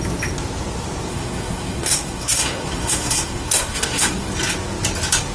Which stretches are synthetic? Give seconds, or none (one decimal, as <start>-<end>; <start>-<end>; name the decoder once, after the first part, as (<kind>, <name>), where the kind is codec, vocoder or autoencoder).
1.1-4.3 (codec, SNAC)